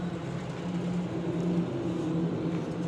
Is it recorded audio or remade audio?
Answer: recorded